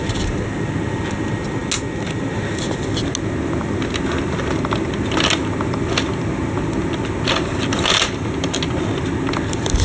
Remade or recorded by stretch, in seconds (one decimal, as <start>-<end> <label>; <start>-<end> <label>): 0.0-9.8 recorded